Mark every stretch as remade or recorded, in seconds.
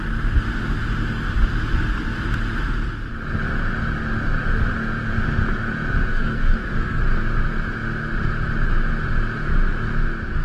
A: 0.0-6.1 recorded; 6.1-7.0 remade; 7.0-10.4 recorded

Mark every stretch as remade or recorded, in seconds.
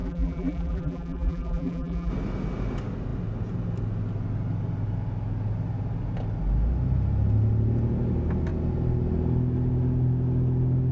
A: 0.0-2.1 remade; 2.1-10.9 recorded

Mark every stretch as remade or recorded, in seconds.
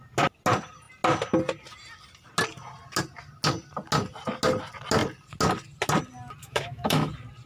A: 0.0-6.4 recorded; 6.4-7.1 remade; 7.1-7.5 recorded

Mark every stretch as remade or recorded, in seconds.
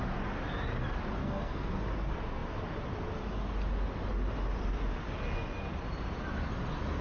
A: 0.0-1.2 recorded; 1.2-1.7 remade; 1.7-7.0 recorded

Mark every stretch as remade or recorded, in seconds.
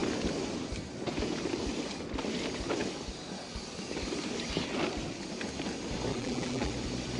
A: 0.0-6.1 recorded; 6.1-6.7 remade; 6.7-7.2 recorded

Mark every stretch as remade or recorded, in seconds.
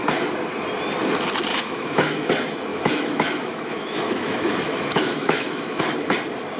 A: 0.0-1.5 recorded; 1.5-2.3 remade; 2.3-2.7 recorded; 2.7-5.8 remade; 5.8-6.6 recorded